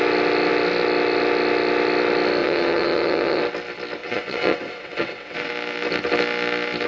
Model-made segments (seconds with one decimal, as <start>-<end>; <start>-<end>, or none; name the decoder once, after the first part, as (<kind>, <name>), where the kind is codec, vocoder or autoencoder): 2.4-3.4 (vocoder, WaveNeXt); 4.0-5.5